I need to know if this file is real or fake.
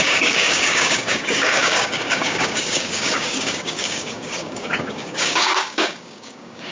fake